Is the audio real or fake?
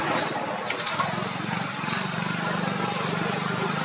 real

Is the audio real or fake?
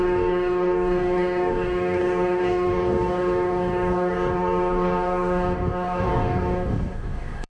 fake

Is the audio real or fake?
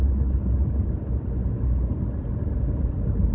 real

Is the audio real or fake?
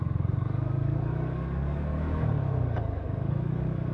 fake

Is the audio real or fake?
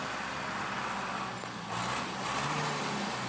real